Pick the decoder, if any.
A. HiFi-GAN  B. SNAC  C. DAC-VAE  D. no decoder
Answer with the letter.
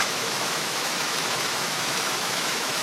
C